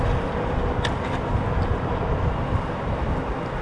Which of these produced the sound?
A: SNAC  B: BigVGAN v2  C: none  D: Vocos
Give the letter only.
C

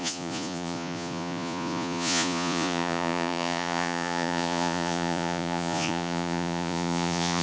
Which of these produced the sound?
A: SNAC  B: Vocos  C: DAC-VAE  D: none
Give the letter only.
B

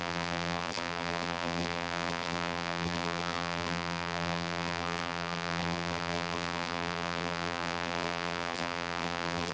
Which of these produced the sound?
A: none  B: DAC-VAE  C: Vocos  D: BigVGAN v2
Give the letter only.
D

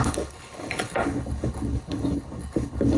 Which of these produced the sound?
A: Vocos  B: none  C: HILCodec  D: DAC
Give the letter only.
C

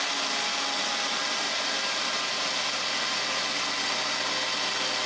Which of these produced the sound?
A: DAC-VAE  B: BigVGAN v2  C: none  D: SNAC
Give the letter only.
C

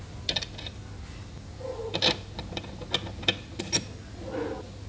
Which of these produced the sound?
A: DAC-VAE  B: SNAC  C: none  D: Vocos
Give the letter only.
C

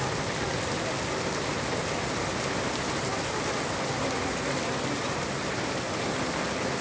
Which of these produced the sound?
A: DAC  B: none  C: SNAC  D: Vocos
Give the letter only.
B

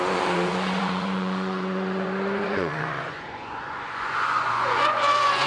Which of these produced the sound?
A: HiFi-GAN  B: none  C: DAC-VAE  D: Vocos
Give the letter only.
D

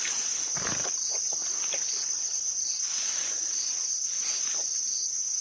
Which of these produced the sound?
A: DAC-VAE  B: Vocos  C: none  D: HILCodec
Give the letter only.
C